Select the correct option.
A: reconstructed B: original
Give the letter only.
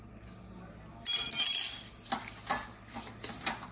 B